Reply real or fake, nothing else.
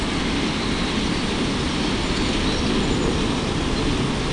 real